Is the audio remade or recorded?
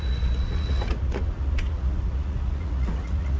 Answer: remade